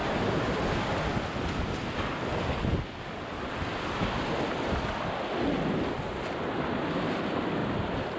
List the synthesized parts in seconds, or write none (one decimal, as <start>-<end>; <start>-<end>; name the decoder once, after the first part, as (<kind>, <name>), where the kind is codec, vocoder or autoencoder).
0.0-0.5 (vocoder, BigVGAN v2); 7.6-8.2